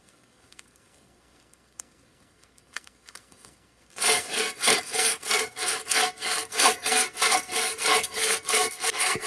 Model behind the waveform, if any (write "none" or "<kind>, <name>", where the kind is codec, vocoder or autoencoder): codec, SNAC